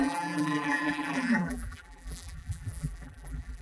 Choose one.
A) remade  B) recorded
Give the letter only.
A